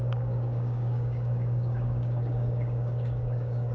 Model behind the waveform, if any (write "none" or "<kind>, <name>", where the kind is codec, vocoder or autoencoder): codec, DAC